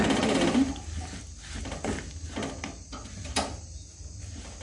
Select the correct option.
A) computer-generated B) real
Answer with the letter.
B